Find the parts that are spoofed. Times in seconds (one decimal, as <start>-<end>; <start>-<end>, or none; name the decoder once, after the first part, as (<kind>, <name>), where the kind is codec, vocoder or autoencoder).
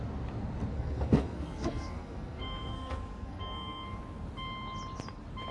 0.7-4.0 (codec, SNAC)